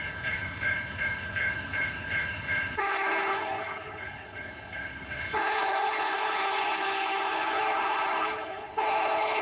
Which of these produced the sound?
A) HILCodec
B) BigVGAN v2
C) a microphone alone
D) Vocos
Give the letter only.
A